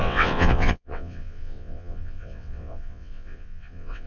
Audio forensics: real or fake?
fake